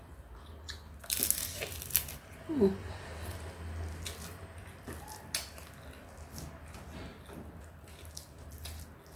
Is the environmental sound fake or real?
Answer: real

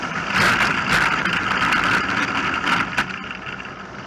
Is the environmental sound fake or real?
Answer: real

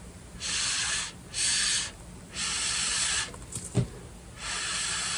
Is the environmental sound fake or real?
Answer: real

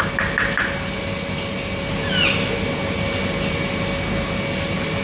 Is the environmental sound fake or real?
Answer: real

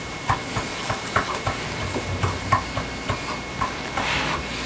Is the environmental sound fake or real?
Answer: real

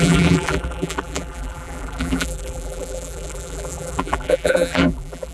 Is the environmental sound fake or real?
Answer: fake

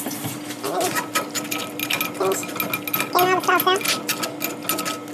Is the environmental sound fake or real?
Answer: real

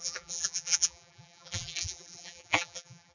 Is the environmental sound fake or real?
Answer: fake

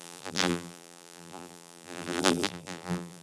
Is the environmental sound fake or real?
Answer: fake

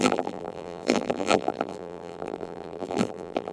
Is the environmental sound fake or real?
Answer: fake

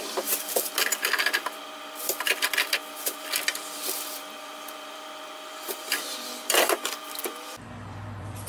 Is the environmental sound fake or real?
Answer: fake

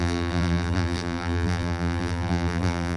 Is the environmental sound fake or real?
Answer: fake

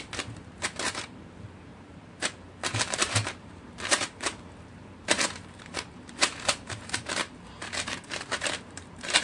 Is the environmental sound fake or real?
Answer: fake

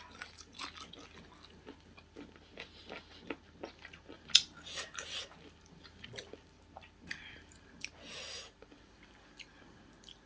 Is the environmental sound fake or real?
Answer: real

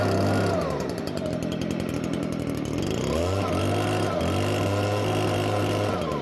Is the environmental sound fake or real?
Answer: real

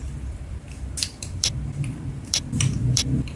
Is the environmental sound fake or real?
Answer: fake